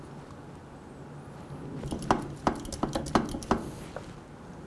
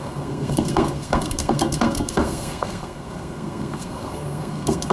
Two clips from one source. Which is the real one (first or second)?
first